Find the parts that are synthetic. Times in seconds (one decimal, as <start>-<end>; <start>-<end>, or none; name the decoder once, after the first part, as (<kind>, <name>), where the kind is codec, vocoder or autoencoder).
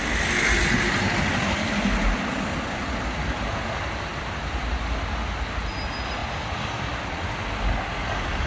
none